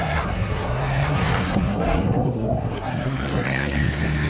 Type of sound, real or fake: fake